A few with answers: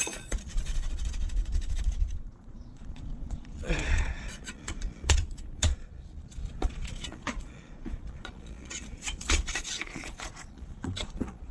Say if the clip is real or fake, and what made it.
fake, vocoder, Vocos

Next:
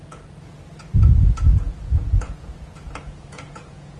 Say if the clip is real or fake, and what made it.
fake, vocoder, Vocos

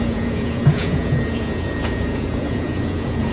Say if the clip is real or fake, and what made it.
fake, vocoder, Vocos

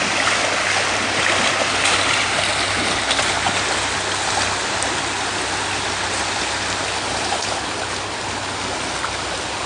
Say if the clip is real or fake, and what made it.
real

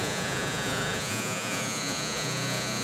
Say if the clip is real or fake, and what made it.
fake, vocoder, Vocos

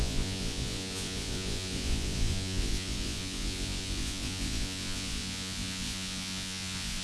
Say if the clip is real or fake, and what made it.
fake, vocoder, Vocos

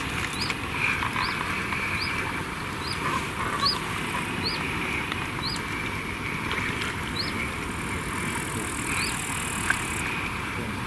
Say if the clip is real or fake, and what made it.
real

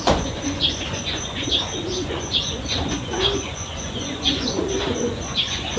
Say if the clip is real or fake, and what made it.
fake, vocoder, Vocos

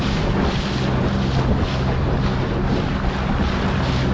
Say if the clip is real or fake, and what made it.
real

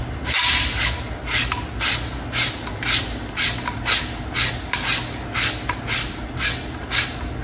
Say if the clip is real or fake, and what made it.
real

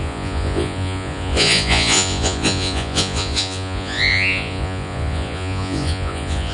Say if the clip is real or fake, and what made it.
fake, vocoder, Vocos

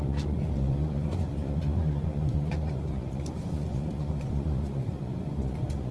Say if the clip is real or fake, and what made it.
fake, vocoder, Vocos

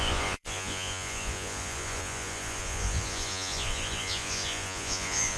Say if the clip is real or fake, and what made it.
fake, vocoder, Vocos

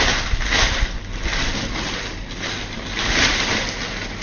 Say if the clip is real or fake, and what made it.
real